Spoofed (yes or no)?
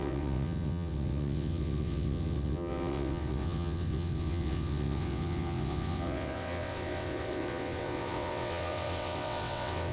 yes